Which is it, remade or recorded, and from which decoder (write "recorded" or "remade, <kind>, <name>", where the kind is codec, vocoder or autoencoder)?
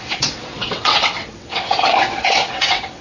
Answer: remade, vocoder, WaveNeXt